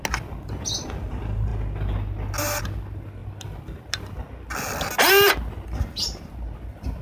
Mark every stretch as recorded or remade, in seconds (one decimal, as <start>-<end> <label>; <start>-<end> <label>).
0.0-7.0 recorded